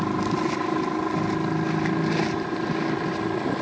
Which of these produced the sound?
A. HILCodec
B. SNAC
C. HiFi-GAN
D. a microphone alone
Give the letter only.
D